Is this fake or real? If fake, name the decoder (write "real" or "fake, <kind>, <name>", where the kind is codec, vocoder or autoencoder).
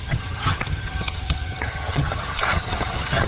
fake, vocoder, HiFi-GAN